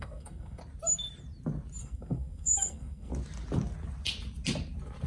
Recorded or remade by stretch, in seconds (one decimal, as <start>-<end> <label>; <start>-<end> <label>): 0.0-0.6 remade; 0.6-1.8 recorded; 1.8-3.1 remade; 3.1-5.1 recorded